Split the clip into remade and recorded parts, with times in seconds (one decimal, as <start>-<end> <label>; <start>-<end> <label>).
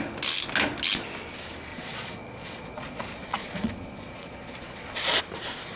0.0-1.7 recorded; 1.7-5.2 remade; 5.2-5.8 recorded